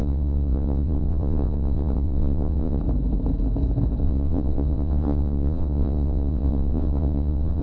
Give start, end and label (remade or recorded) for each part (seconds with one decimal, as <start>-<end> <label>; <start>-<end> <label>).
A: 0.0-2.8 remade; 2.8-4.0 recorded; 4.0-7.6 remade